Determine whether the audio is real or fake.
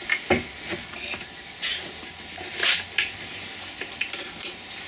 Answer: real